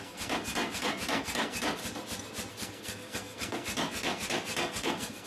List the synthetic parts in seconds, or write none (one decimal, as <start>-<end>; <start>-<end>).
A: 0.0-1.8; 2.5-5.3